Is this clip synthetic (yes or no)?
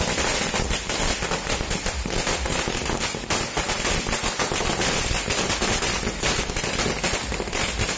no